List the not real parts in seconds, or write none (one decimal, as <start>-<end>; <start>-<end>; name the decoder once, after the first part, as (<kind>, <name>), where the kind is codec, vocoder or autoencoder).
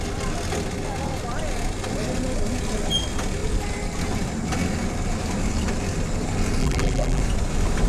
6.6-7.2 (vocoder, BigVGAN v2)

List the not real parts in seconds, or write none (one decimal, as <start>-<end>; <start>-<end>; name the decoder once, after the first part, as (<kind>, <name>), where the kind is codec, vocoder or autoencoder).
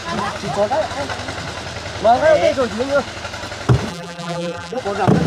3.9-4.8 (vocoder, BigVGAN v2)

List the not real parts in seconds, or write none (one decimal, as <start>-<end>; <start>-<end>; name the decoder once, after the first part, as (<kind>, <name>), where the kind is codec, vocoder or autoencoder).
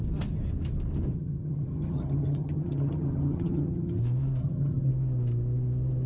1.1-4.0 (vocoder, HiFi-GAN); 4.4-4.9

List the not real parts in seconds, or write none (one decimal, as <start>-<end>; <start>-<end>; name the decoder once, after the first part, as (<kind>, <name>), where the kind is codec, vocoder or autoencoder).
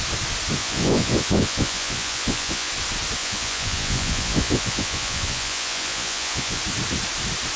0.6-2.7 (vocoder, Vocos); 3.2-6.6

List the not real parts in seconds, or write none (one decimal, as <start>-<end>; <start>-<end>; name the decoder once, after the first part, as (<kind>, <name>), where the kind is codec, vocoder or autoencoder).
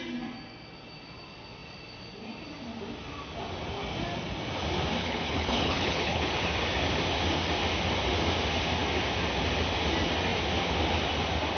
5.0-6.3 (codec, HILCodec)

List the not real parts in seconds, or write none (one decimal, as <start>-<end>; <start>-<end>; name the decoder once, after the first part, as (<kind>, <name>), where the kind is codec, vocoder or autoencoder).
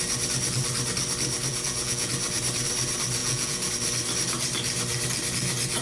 1.5-2.1 (vocoder, Vocos); 3.2-3.7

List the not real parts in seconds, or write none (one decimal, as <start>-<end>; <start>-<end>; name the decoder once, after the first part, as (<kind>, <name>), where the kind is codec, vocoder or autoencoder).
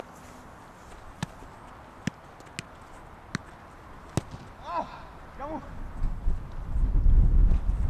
none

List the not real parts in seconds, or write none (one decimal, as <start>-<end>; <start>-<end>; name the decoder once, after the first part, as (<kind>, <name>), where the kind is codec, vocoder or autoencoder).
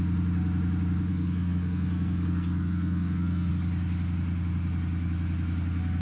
1.1-3.5 (codec, SNAC)